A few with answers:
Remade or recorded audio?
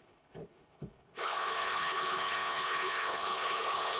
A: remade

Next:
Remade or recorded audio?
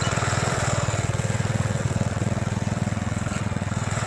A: remade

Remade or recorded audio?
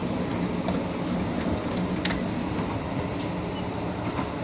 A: recorded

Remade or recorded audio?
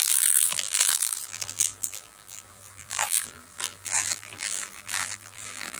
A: remade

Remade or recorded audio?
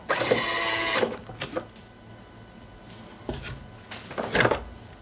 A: recorded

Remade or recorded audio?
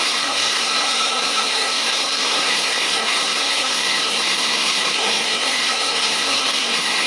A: remade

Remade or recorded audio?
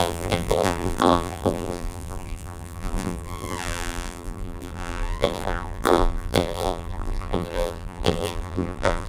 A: remade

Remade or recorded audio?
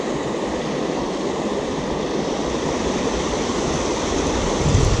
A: recorded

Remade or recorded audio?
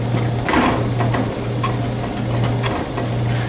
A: recorded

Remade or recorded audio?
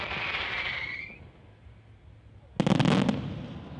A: recorded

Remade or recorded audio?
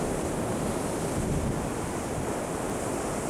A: recorded